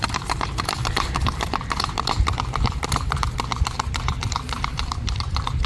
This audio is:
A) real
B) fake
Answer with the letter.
B